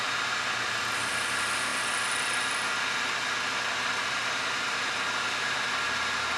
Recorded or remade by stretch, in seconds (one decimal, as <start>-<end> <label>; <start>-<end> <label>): 0.0-6.4 recorded